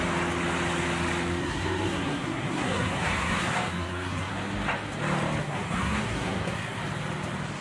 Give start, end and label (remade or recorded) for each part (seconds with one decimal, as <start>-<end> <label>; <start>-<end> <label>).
0.0-1.4 recorded; 1.4-4.3 remade; 4.3-5.4 recorded; 5.4-6.8 remade; 6.8-7.6 recorded